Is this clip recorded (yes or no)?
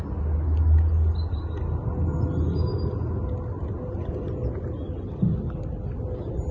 yes